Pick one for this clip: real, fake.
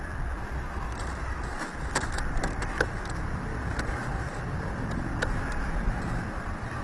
real